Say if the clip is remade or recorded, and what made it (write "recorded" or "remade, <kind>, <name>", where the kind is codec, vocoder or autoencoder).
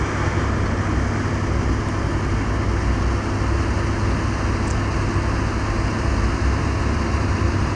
recorded